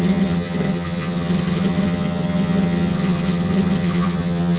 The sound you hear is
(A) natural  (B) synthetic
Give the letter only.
B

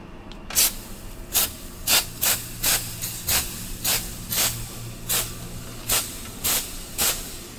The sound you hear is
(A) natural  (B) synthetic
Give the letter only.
A